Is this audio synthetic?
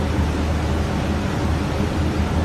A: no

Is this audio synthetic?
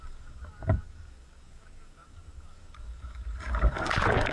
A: yes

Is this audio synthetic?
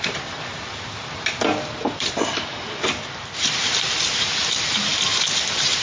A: no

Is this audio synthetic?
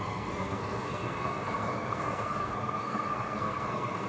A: yes